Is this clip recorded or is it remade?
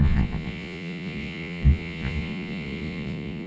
remade